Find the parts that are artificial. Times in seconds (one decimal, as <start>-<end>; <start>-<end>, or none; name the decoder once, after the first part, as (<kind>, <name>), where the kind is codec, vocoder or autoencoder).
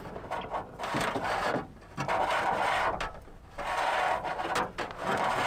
none